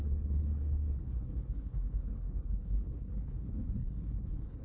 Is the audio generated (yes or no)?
yes